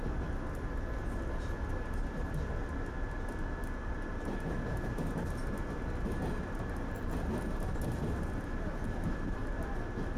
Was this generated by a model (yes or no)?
no